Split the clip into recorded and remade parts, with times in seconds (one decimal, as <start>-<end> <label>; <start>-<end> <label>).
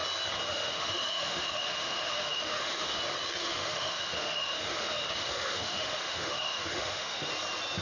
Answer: 0.0-0.5 recorded; 0.5-3.0 remade; 3.0-3.4 recorded; 3.4-7.3 remade; 7.3-7.8 recorded